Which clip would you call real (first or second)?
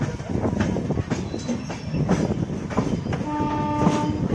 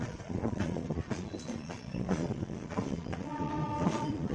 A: first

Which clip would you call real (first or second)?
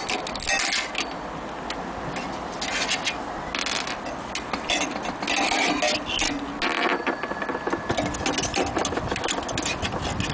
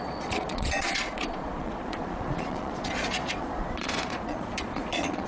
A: first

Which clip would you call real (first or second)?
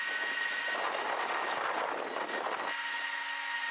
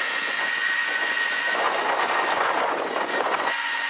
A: first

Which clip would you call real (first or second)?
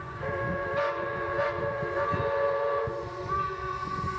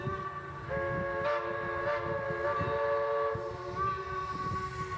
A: second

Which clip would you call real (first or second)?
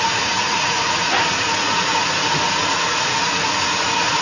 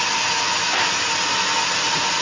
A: second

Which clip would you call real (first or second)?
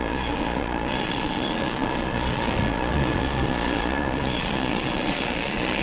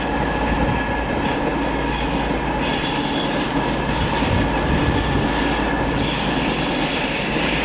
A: second